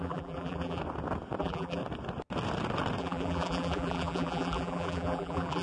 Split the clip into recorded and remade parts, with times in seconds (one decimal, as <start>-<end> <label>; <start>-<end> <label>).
0.0-0.8 remade; 0.8-1.4 recorded; 1.4-1.8 remade; 1.8-3.0 recorded; 3.0-5.6 remade